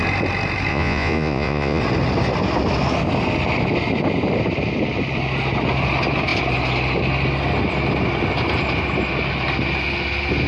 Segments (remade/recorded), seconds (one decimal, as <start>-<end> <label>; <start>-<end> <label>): 0.0-0.7 recorded; 0.7-1.8 remade; 1.8-10.5 recorded